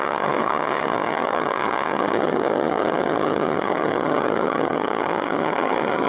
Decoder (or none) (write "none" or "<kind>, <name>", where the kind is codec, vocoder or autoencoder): vocoder, HiFi-GAN